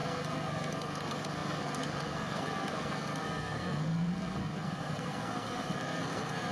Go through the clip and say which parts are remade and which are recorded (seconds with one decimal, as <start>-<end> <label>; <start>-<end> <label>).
0.0-6.5 remade